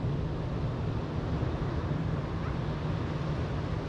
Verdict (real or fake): real